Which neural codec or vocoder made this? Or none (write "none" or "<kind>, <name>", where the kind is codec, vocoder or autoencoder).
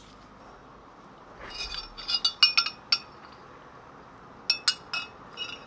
none